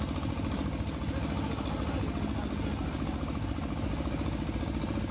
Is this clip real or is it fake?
real